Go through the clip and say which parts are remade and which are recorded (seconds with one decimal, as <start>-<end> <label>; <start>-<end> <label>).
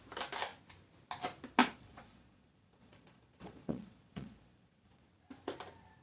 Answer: 0.0-1.6 recorded; 1.6-5.1 remade; 5.1-6.0 recorded